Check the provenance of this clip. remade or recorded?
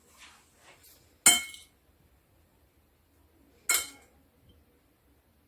recorded